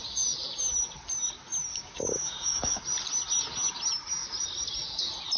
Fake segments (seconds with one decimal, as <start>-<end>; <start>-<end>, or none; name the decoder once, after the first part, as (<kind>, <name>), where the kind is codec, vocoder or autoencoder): 1.7-2.8 (codec, DAC)